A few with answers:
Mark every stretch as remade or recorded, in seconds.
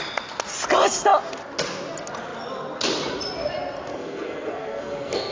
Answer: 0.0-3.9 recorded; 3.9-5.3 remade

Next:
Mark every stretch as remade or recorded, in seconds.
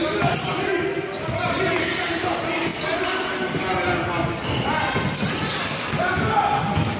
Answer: 0.0-7.0 recorded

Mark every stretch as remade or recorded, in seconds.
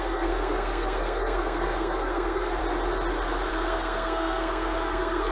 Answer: 0.0-2.6 remade; 2.6-3.5 recorded; 3.5-5.3 remade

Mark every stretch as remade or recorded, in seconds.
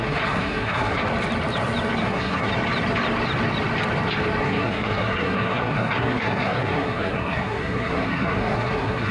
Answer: 0.0-1.0 remade; 1.0-2.0 recorded; 2.0-2.5 remade; 2.5-4.4 recorded; 4.4-9.1 remade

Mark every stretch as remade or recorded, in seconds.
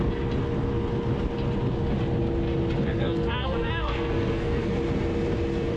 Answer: 0.0-2.8 recorded; 2.8-4.7 remade; 4.7-5.8 recorded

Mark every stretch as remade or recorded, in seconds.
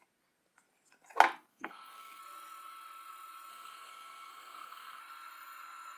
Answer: 0.0-1.5 recorded; 1.5-2.2 remade; 2.2-3.5 recorded; 3.5-5.0 remade; 5.0-6.0 recorded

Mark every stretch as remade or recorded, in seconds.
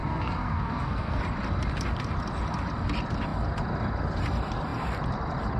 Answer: 0.0-1.2 remade; 1.2-5.6 recorded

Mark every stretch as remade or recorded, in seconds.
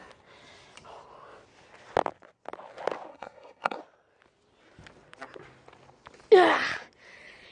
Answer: 0.0-3.1 recorded; 3.1-3.8 remade; 3.8-7.5 recorded